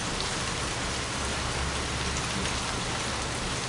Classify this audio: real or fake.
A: real